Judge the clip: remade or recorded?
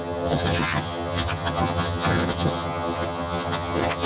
remade